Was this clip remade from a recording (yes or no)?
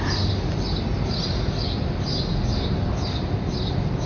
no